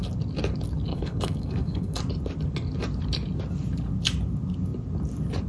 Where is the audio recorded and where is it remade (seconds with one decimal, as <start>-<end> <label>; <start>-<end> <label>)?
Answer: 0.0-0.9 recorded; 0.9-2.0 remade; 2.0-5.5 recorded